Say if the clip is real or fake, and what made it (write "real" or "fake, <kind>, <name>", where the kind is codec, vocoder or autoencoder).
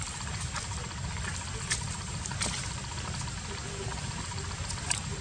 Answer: real